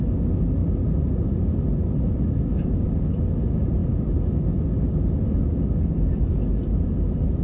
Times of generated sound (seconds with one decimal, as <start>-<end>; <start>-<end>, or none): none